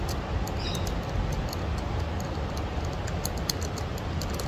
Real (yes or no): yes